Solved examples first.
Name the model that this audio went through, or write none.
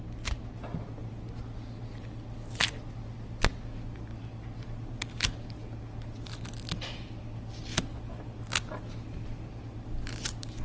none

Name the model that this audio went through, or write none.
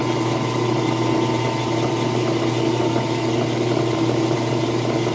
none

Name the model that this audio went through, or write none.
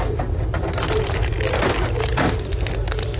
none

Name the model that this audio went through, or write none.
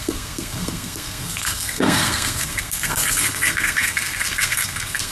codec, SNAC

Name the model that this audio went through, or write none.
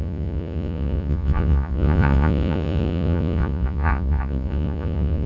vocoder, Vocos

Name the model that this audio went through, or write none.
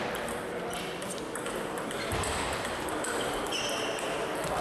none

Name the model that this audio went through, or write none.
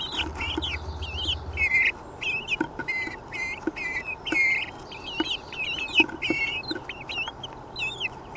none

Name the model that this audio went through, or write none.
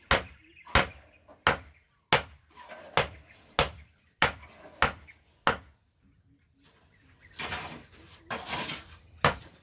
none